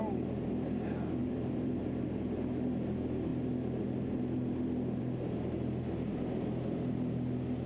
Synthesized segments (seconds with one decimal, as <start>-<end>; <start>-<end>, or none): 1.2-1.8